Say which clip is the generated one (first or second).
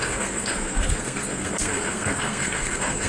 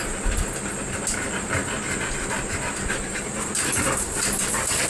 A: first